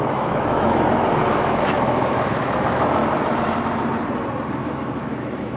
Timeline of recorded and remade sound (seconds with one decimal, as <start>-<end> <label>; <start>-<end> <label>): 0.0-3.0 remade; 3.0-4.6 recorded; 4.6-5.6 remade